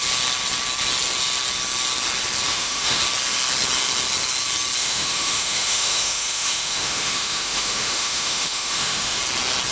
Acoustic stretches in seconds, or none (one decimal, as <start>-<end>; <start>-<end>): 0.0-2.5; 3.0-4.8; 9.2-9.7